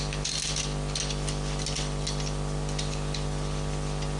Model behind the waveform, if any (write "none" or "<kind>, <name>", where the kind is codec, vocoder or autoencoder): none